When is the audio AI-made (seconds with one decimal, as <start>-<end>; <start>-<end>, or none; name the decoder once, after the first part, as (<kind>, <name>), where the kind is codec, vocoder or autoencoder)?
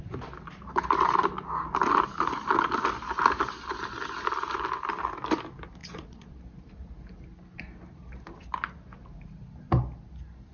5.8-6.4 (vocoder, Vocos)